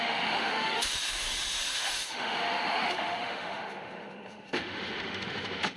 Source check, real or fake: fake